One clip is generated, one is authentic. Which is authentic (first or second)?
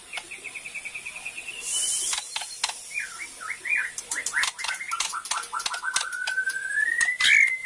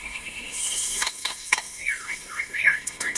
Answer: first